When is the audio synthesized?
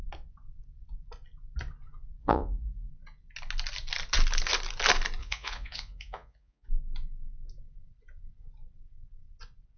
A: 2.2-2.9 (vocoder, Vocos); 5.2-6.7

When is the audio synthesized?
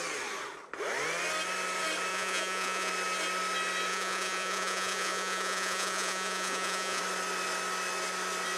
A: 2.1-2.9 (vocoder, Vocos); 3.9-7.0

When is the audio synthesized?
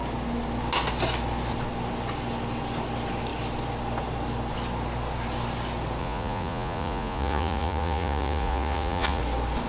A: 6.0-9.2 (vocoder, Vocos)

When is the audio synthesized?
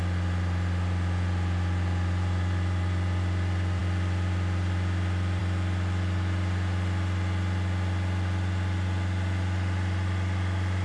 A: none